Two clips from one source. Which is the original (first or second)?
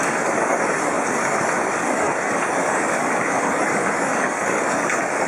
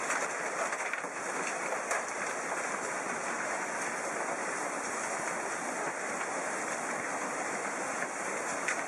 second